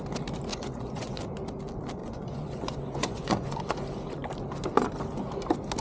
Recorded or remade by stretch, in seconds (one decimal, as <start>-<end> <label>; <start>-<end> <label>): 0.0-0.5 recorded; 0.5-1.2 remade; 1.2-2.0 recorded; 2.0-3.6 remade; 3.6-5.8 recorded